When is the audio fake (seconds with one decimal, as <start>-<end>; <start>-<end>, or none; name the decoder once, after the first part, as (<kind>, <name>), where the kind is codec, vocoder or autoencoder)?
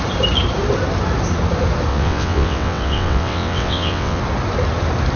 1.9-4.2 (vocoder, WaveNeXt)